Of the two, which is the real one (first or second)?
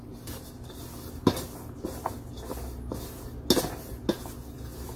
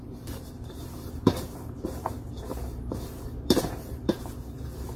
first